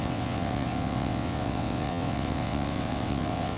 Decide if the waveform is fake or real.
fake